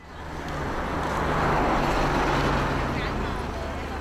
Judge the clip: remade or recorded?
recorded